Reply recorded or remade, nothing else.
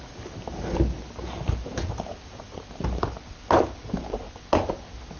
recorded